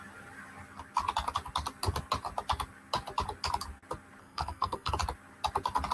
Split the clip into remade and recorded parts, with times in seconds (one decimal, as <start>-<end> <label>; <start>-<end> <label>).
0.0-4.2 recorded; 4.2-4.9 remade; 4.9-5.9 recorded